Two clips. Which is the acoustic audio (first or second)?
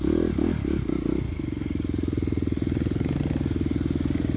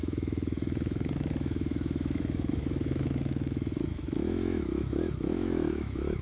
first